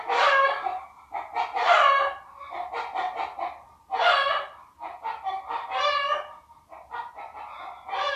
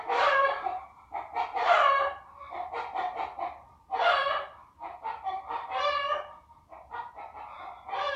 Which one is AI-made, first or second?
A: second